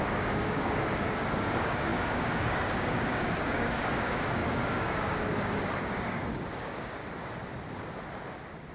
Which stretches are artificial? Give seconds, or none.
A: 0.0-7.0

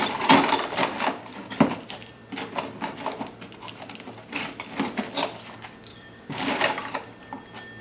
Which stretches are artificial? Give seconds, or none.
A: 5.9-6.6

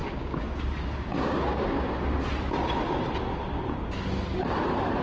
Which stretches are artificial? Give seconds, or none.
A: 0.0-2.2; 3.4-4.2

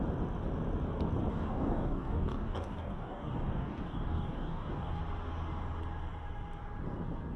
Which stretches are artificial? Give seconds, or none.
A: 1.3-5.0

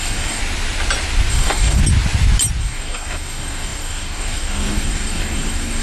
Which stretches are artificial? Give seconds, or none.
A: 0.0-0.4; 1.3-1.8; 2.6-5.8

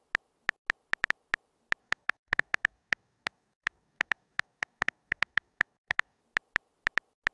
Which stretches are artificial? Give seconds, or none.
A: 1.8-6.2

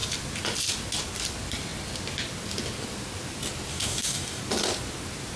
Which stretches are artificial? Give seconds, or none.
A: 3.7-4.4